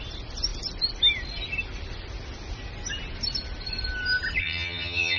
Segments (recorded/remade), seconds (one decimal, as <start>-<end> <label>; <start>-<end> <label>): 0.0-4.4 recorded; 4.4-5.2 remade